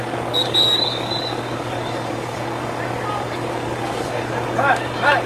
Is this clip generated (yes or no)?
yes